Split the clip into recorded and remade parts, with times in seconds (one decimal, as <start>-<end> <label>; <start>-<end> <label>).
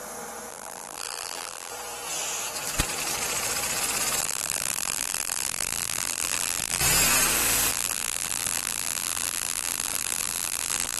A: 0.0-0.5 recorded; 0.5-1.7 remade; 1.7-4.2 recorded; 4.2-6.8 remade; 6.8-7.7 recorded; 7.7-11.0 remade